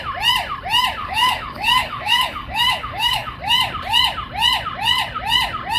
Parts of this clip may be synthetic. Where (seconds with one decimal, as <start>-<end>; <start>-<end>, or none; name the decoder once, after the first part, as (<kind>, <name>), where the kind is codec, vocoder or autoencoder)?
1.0-3.5 (codec, DAC)